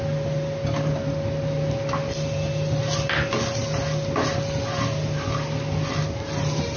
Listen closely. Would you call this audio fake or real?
real